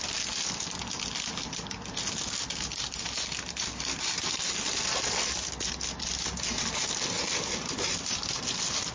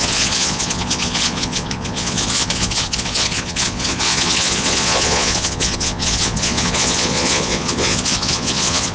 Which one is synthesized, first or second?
second